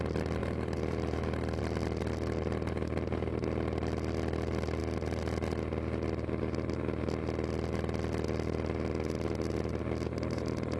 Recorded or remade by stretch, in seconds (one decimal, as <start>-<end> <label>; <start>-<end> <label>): 0.0-0.4 recorded; 0.4-1.6 remade; 1.6-10.8 recorded